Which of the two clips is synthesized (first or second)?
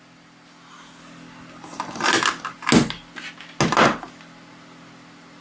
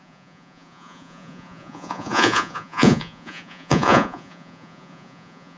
second